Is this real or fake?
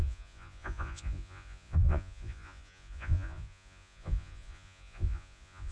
fake